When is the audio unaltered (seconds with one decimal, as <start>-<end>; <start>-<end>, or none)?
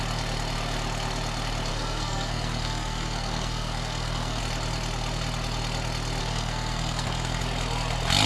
0.0-1.7; 4.4-6.2; 7.4-8.3